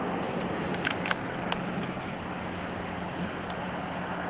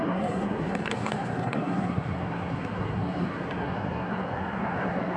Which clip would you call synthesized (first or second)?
second